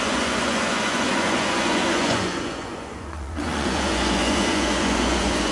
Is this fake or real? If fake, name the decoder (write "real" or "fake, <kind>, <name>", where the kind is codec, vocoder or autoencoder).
fake, vocoder, Vocos